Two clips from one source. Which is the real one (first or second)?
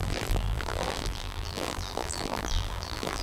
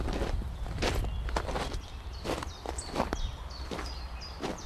second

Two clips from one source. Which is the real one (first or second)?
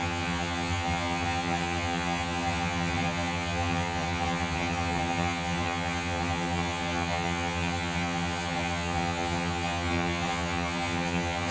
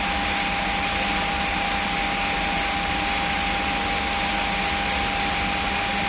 second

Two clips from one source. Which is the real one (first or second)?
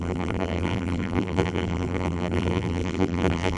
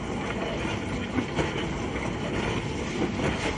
second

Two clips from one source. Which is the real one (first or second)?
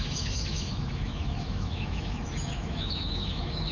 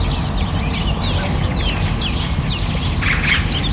second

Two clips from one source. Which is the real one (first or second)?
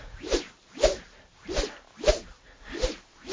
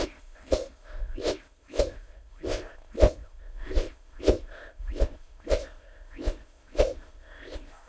first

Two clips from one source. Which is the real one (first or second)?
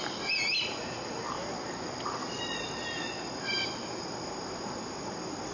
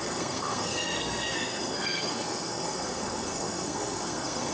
first